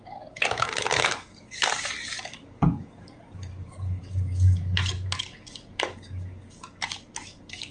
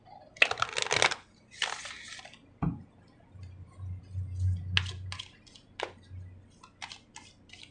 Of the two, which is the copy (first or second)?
first